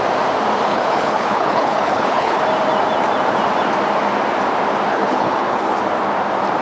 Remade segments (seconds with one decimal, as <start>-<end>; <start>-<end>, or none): 0.7-2.4; 4.9-5.7